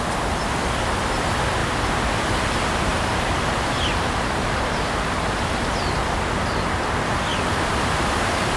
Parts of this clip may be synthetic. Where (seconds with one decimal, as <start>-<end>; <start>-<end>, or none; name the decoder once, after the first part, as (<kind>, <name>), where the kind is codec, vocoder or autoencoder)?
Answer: 2.9-5.7 (vocoder, BigVGAN v2); 7.3-8.6